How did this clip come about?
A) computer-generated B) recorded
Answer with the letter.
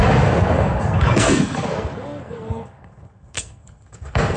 A